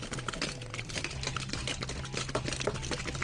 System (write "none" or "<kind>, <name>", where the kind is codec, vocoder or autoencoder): none